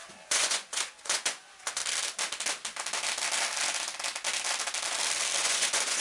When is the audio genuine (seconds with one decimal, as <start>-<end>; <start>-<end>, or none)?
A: 1.8-5.4